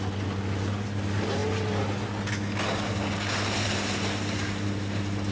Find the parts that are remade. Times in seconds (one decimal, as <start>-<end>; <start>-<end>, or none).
none